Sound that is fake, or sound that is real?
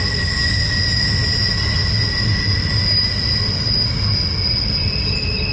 real